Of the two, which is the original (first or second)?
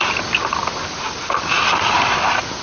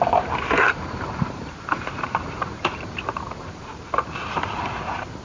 first